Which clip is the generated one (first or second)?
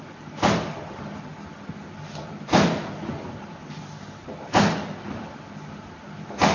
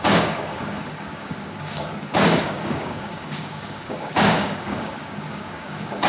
second